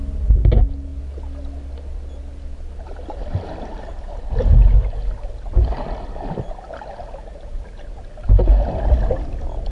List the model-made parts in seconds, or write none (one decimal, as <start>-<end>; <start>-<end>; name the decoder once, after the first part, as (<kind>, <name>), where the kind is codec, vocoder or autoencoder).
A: none